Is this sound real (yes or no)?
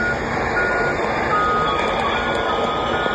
yes